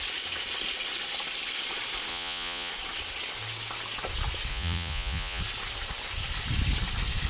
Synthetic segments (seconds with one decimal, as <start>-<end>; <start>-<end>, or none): 2.1-2.7; 4.5-5.4